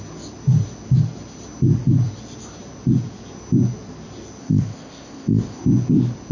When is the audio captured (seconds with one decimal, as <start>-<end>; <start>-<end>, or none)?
0.0-4.4; 5.6-6.3